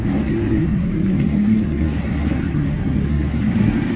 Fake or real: fake